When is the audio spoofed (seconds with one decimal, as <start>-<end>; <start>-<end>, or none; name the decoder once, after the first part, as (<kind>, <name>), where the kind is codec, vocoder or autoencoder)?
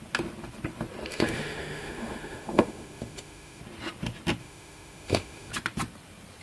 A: 1.1-3.6 (autoencoder, DAC-VAE); 4.4-5.5